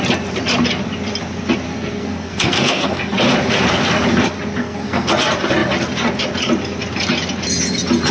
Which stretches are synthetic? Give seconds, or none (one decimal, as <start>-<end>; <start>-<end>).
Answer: 1.7-3.0; 4.6-5.1